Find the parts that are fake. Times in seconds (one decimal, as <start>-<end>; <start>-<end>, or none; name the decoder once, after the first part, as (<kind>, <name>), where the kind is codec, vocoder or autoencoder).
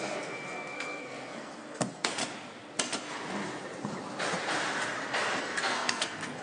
0.0-2.2 (codec, SNAC); 5.4-6.4